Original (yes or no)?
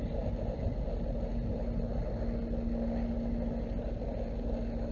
yes